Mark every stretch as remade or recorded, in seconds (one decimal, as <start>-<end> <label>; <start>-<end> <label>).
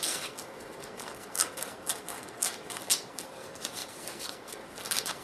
0.0-5.2 remade